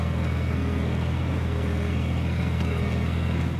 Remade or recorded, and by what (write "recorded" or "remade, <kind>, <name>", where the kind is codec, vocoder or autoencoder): remade, codec, SNAC